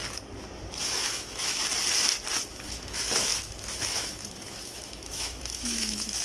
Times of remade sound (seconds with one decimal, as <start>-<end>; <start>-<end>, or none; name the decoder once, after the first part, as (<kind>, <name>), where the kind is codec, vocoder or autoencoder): 0.8-1.6 (autoencoder, DAC-VAE); 2.5-6.2